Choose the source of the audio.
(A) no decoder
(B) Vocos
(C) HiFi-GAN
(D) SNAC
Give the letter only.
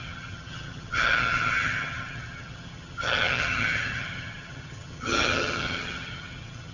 C